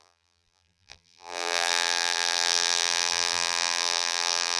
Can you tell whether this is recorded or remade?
remade